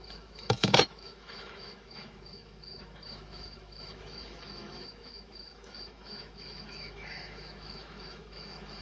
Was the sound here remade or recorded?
remade